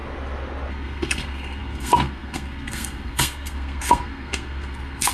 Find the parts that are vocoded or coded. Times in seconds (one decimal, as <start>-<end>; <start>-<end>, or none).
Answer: 0.7-5.1